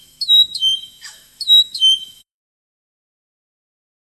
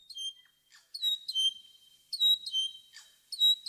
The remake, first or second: first